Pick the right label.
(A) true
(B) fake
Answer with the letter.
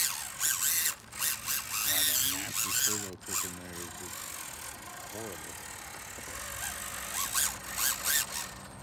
A